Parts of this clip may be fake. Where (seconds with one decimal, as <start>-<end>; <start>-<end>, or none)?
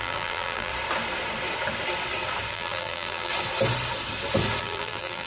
0.0-0.7; 2.5-3.3; 4.6-5.3